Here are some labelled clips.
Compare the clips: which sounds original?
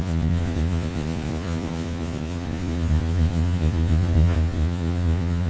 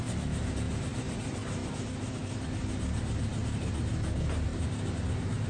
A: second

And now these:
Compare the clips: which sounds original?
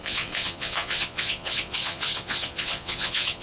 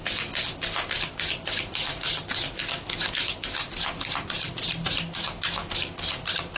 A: second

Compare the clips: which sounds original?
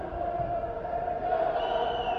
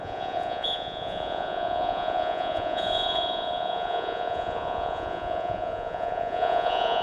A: first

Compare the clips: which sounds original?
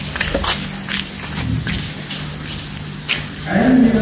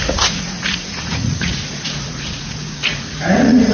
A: first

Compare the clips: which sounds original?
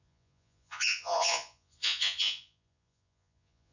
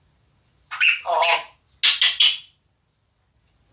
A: second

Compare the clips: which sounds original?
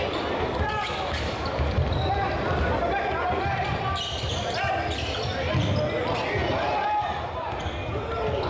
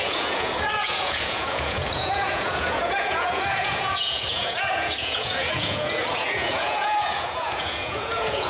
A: first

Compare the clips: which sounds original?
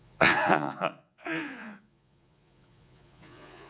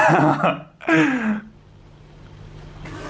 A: second